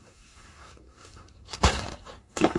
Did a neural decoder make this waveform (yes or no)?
yes